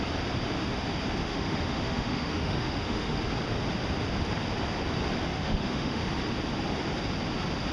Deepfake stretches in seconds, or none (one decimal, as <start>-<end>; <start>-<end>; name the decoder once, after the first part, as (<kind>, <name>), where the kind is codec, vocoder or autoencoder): 1.2-3.2 (autoencoder, DAC-VAE); 5.3-6.1